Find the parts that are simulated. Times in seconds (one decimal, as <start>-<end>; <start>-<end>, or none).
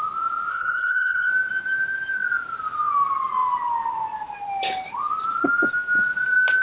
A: 0.5-1.3